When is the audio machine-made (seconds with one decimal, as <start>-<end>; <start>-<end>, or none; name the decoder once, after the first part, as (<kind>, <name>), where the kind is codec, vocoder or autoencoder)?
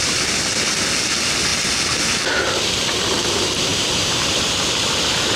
3.7-4.5 (vocoder, BigVGAN v2)